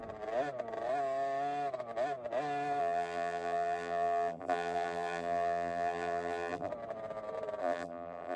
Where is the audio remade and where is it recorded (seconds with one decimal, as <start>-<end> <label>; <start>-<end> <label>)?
0.0-2.8 recorded; 2.8-6.7 remade; 6.7-7.6 recorded; 7.6-8.4 remade